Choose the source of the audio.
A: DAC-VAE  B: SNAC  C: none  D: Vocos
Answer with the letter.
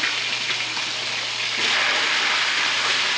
C